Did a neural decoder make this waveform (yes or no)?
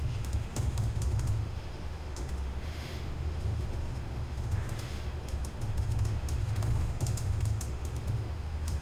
yes